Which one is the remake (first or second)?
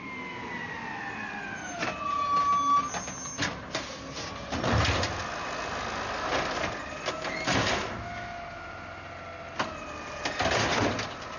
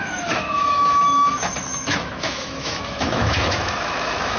second